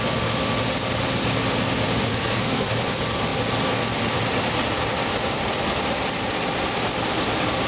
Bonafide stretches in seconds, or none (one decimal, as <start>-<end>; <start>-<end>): 0.0-2.1; 2.7-7.7